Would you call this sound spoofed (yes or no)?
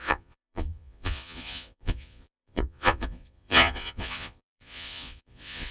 yes